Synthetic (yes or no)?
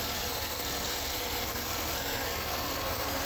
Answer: yes